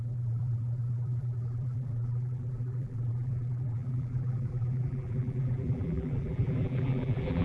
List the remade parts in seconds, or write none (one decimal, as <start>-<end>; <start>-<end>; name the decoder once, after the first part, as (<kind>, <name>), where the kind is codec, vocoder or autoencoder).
0.0-7.4 (vocoder, BigVGAN v2)